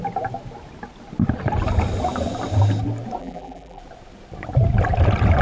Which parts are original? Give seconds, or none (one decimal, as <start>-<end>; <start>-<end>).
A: 0.0-3.2; 3.8-5.4